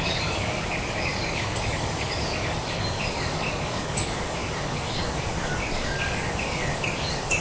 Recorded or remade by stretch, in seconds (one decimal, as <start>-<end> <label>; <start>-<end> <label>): 0.0-7.4 remade